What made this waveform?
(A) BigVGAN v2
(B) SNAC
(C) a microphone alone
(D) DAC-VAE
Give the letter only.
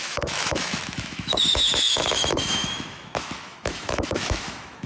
D